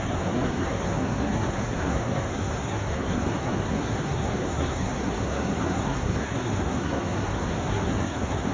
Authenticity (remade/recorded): remade